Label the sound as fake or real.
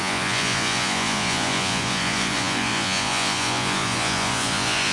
fake